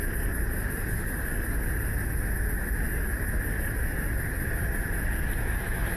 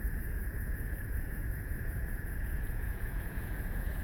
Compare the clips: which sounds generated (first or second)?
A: second